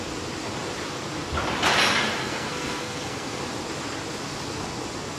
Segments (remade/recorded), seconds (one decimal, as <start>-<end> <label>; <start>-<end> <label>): 0.0-2.2 recorded; 2.2-3.4 remade; 3.4-5.2 recorded